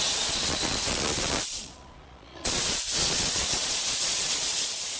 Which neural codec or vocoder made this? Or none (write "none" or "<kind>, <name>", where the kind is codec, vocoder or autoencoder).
vocoder, Vocos